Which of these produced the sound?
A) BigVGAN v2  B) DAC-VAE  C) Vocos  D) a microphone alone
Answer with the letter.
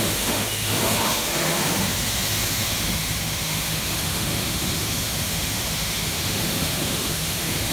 B